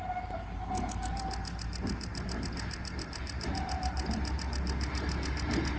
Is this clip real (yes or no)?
yes